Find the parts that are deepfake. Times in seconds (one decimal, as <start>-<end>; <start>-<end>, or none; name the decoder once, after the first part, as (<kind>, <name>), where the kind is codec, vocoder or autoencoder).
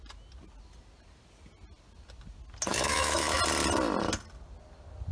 2.7-3.4 (autoencoder, DAC-VAE)